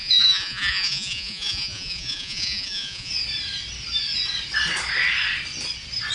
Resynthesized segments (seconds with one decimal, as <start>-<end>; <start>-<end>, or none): 0.0-3.1